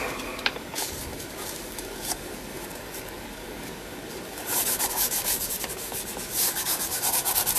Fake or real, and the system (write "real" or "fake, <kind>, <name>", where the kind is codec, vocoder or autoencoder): fake, codec, DAC